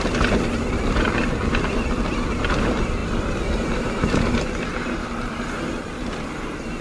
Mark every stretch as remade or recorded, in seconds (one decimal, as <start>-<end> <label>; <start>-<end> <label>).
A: 0.0-6.8 recorded